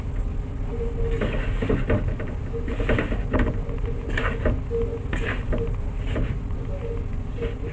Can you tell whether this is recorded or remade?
recorded